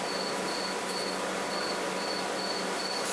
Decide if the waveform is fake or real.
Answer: real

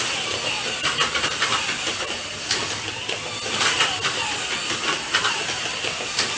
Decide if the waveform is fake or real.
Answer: real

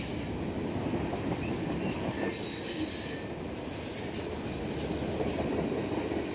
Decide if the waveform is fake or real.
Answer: real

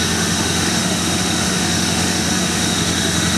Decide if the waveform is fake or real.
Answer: fake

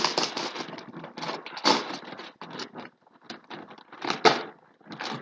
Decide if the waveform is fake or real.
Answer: real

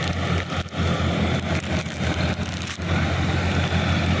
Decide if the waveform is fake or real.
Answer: real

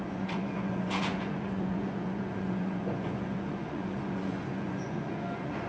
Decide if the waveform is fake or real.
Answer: fake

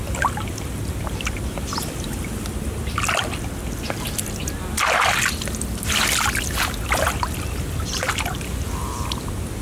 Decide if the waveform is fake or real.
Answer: real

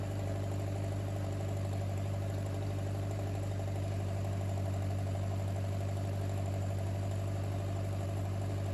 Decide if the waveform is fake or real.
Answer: fake